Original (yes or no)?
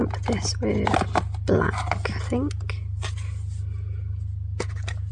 yes